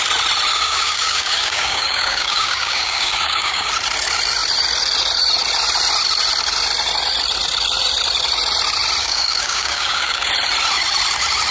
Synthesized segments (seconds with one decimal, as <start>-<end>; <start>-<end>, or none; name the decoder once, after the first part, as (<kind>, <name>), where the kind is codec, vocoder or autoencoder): 0.5-3.7 (codec, DAC); 9.0-10.3